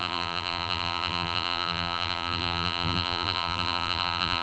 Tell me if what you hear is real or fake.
fake